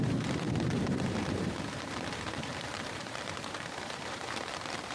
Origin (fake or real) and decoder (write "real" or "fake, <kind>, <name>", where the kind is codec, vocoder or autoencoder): fake, vocoder, BigVGAN v2